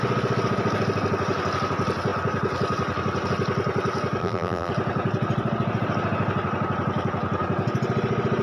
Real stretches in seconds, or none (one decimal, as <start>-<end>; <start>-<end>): 0.0-4.2; 4.7-8.4